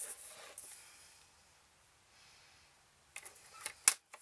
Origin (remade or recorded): recorded